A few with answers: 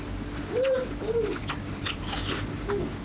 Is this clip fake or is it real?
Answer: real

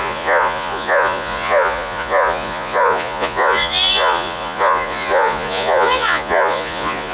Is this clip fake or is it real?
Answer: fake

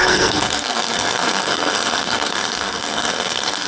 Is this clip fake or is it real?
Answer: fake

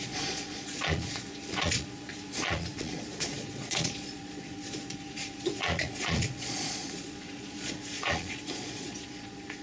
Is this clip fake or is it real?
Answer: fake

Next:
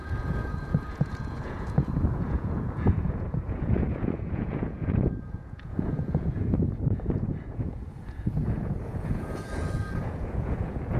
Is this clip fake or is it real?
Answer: fake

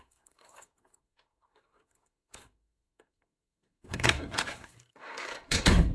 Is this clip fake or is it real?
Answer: fake